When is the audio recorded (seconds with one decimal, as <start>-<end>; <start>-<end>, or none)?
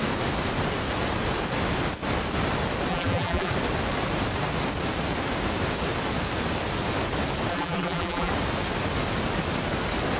0.0-2.9; 3.5-7.5; 8.3-10.2